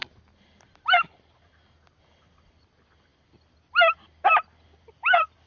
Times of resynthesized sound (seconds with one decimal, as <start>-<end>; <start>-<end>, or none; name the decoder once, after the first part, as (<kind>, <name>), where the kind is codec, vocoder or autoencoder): none